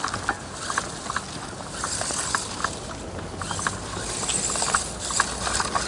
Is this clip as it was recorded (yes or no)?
yes